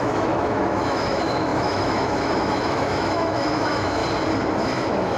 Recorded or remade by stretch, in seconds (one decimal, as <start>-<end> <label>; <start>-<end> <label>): 0.0-4.0 remade; 4.0-4.6 recorded; 4.6-5.2 remade